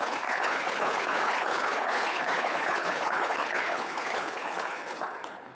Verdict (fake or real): fake